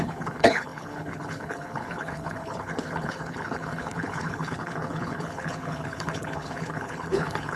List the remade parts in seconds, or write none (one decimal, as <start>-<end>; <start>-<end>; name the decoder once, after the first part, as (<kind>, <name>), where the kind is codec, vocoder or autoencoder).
0.0-7.6 (codec, HILCodec)